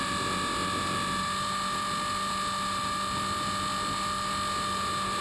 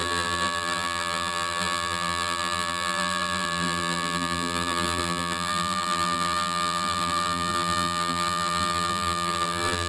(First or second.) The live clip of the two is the first